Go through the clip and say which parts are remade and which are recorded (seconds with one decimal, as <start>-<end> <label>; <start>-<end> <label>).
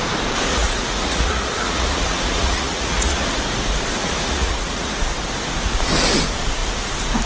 0.0-0.5 recorded; 0.5-3.4 remade; 3.4-4.0 recorded; 4.0-4.9 remade; 4.9-7.3 recorded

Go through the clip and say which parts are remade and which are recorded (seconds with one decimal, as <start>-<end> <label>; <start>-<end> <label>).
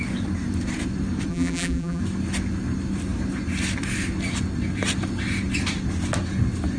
0.0-1.3 recorded; 1.3-2.0 remade; 2.0-6.8 recorded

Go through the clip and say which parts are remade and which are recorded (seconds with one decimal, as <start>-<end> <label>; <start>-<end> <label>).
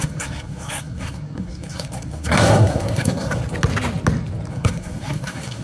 0.0-3.4 remade; 3.4-4.5 recorded; 4.5-5.6 remade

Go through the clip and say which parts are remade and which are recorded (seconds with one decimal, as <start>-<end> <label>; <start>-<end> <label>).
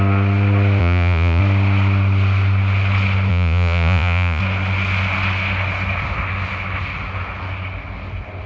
0.0-0.8 recorded; 0.8-1.4 remade; 1.4-3.3 recorded; 3.3-4.4 remade; 4.4-8.5 recorded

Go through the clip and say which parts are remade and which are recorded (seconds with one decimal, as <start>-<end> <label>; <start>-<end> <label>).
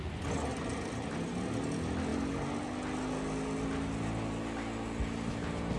0.0-5.8 recorded